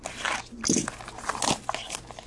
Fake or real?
real